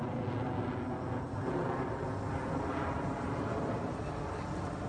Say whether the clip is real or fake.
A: real